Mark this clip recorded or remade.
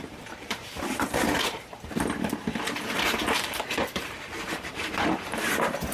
remade